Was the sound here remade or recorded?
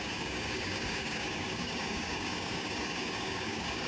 remade